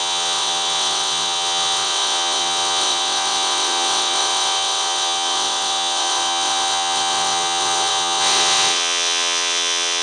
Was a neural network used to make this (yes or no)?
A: yes